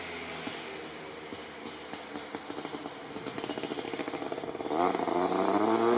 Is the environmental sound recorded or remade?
recorded